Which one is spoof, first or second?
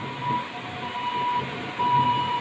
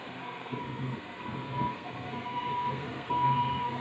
second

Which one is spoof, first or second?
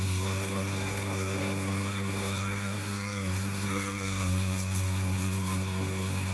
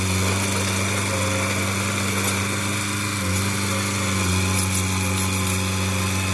first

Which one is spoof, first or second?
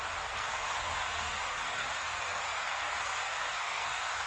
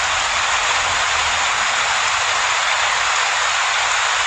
first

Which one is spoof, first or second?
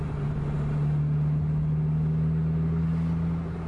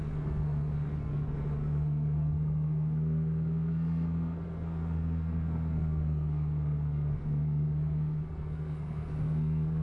second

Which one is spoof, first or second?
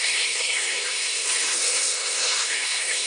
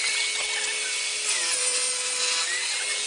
first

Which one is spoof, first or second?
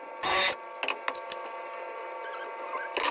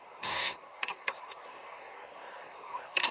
second